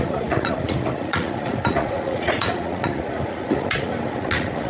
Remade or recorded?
remade